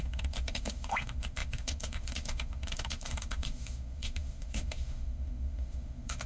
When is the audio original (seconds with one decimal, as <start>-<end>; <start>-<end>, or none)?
none